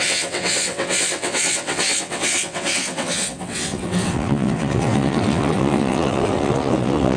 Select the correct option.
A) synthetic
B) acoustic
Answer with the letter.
A